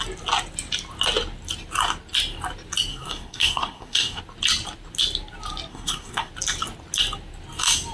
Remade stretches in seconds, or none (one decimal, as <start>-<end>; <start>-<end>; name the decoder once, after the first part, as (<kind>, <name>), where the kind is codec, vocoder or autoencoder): 2.9-4.2 (codec, SNAC); 5.7-6.3